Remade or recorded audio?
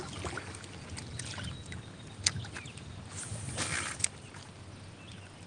recorded